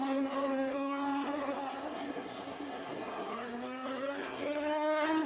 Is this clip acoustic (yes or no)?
no